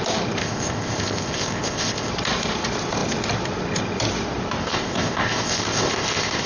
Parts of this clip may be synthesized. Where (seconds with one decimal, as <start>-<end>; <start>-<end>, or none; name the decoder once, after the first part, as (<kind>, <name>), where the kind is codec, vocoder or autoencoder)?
0.4-2.1 (codec, ZipCodec); 4.6-6.5